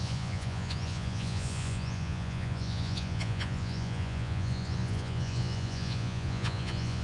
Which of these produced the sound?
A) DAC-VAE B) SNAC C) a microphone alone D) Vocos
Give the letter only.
D